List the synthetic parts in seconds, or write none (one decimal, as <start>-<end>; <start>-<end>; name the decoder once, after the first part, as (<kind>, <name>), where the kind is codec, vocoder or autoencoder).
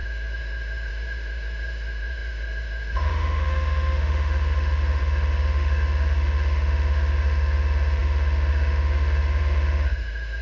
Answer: 0.0-10.4 (autoencoder, DAC-VAE)